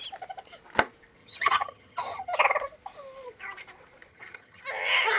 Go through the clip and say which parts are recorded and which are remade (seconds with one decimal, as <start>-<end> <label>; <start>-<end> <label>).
0.0-1.2 recorded; 1.2-2.3 remade; 2.3-4.1 recorded; 4.1-4.6 remade; 4.6-5.2 recorded